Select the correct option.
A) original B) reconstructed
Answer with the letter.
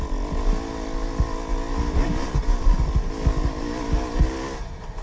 A